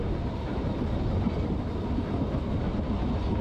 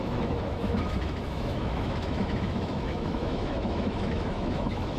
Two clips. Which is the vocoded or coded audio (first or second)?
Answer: second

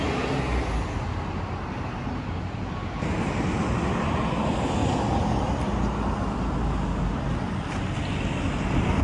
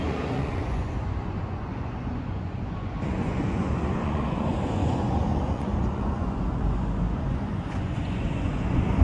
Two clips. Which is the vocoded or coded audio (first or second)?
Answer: second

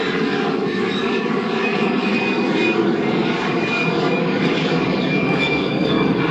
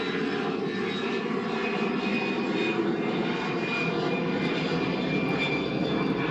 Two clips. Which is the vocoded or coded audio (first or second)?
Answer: first